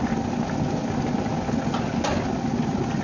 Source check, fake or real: real